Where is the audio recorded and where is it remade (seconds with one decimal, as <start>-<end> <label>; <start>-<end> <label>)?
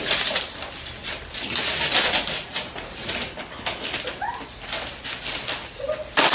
0.0-3.3 recorded; 3.3-4.0 remade; 4.0-6.3 recorded